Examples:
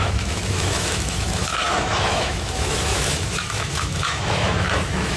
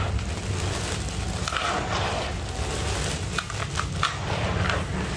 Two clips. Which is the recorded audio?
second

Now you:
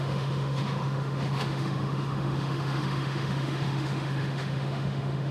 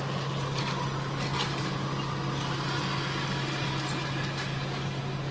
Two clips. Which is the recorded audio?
second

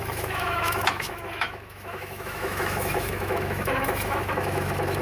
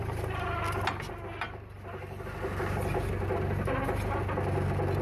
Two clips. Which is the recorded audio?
second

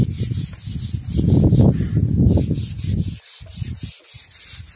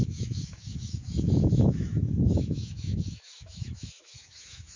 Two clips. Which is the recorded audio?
first